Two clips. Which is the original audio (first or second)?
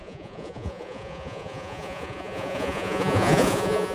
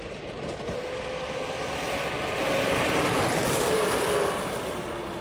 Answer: second